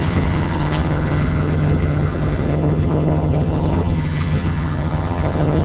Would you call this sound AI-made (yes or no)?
yes